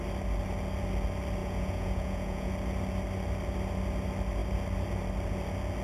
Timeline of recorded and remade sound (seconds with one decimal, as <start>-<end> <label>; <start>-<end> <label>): 0.0-1.4 recorded; 1.4-2.5 remade; 2.5-5.8 recorded